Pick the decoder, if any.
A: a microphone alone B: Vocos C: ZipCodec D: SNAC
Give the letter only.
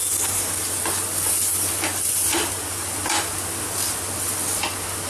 A